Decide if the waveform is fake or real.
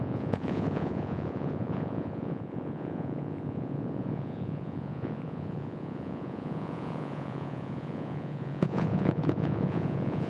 fake